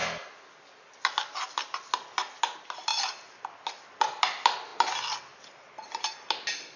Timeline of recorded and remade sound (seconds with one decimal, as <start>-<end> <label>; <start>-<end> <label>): 0.0-6.8 recorded

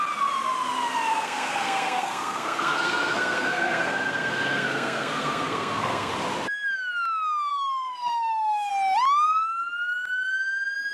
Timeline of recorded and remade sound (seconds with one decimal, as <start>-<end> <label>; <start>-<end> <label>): 0.0-1.1 recorded; 1.1-6.1 remade; 6.1-7.5 recorded; 7.5-8.7 remade; 8.7-10.9 recorded

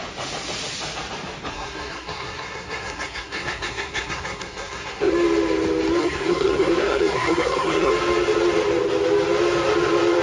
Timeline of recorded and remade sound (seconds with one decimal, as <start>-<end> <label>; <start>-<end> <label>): 0.0-1.5 recorded; 1.5-5.1 remade; 5.1-6.0 recorded; 6.0-7.9 remade; 7.9-10.2 recorded